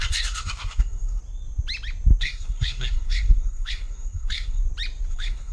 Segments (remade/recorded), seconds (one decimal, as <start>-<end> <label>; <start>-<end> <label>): 0.0-1.2 remade; 1.2-2.2 recorded; 2.2-4.6 remade; 4.6-5.1 recorded; 5.1-5.5 remade